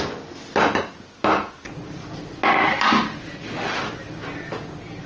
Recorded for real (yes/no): yes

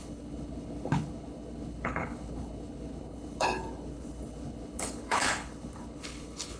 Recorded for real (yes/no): no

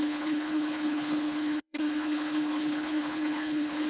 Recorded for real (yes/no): no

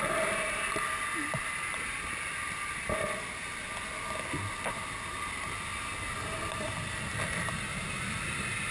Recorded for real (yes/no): yes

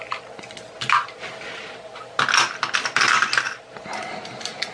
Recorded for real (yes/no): yes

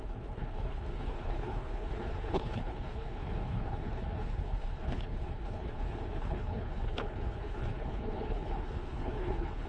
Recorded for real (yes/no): no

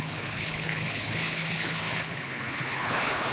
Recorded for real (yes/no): no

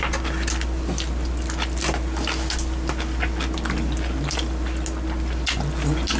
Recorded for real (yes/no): yes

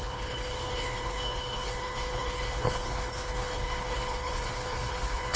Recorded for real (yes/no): no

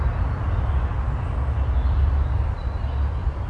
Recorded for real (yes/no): yes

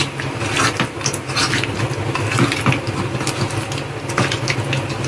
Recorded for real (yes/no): yes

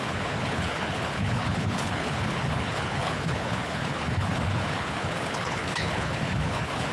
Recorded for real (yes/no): no